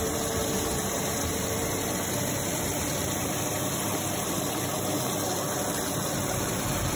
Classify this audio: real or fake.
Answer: fake